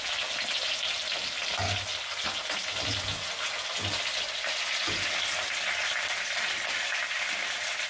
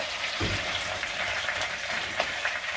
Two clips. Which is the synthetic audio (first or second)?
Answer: second